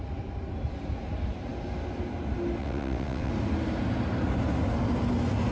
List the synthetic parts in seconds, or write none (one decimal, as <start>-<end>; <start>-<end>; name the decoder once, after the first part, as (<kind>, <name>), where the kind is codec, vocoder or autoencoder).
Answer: 2.6-3.3 (vocoder, WaveNeXt)